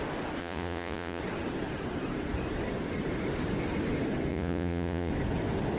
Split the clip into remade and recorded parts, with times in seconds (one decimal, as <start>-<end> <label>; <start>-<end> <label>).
0.0-0.4 recorded; 0.4-1.2 remade; 1.2-4.3 recorded; 4.3-5.1 remade; 5.1-5.8 recorded